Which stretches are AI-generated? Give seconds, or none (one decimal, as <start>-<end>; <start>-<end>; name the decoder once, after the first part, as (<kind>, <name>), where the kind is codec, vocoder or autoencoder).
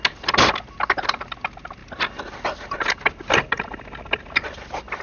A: none